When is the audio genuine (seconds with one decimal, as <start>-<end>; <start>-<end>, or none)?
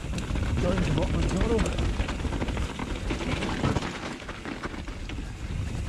0.0-5.9